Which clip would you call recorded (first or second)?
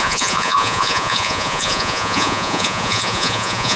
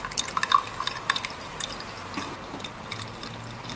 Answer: second